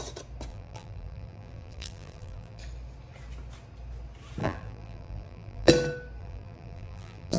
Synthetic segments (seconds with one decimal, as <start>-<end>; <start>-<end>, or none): 0.5-2.6; 4.4-5.7; 6.2-7.4